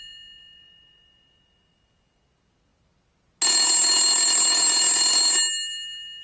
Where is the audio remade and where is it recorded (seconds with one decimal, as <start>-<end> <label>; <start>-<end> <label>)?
0.0-6.2 recorded